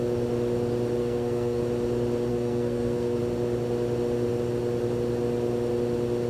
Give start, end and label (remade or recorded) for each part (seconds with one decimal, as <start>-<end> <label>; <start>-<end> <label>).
0.0-1.0 recorded; 1.0-1.6 remade; 1.6-2.3 recorded; 2.3-3.2 remade; 3.2-6.3 recorded